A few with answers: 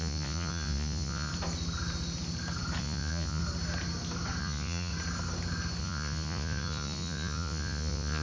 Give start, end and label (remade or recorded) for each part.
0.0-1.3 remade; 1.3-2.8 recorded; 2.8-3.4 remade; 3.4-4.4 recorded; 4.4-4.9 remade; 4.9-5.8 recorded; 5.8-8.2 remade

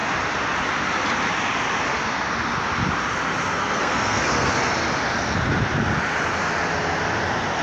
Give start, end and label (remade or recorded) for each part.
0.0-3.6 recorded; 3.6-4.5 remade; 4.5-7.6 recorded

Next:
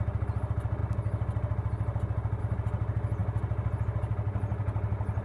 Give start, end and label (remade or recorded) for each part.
0.0-5.2 recorded

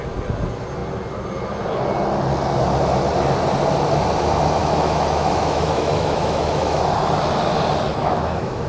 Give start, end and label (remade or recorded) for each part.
0.0-4.6 recorded; 4.6-6.8 remade; 6.8-8.0 recorded; 8.0-8.7 remade

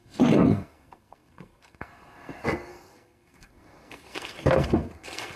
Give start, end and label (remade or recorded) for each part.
0.0-5.4 remade